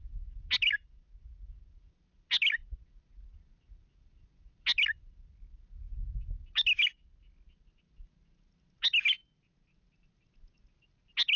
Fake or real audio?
real